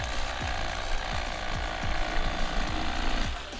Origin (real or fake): real